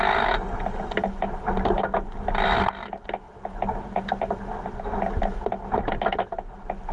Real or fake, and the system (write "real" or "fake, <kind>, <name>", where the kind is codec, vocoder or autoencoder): real